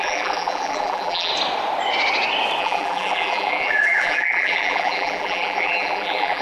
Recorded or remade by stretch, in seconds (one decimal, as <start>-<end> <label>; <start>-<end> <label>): 0.0-1.3 remade; 1.3-2.6 recorded; 2.6-6.4 remade